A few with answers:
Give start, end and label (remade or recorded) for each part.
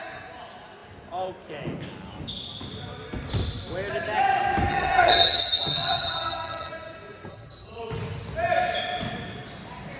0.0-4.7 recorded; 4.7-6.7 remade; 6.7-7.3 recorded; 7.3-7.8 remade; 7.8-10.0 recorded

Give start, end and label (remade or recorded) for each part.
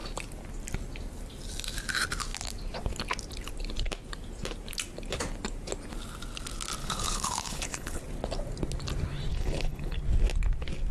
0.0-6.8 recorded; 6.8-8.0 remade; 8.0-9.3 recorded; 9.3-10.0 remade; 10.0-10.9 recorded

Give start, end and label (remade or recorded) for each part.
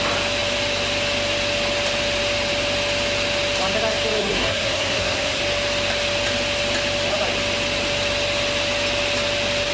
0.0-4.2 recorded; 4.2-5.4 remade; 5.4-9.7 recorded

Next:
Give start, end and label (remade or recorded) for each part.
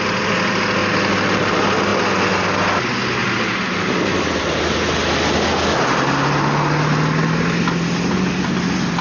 0.0-9.0 recorded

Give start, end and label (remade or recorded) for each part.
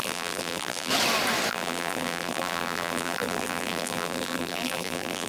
0.0-0.9 remade; 0.9-1.5 recorded; 1.5-5.3 remade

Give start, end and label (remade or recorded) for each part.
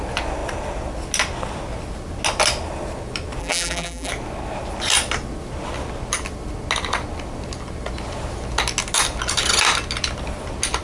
0.0-3.4 recorded; 3.4-4.1 remade; 4.1-10.8 recorded